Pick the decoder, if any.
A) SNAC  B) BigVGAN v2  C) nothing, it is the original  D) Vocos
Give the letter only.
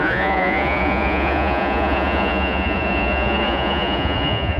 D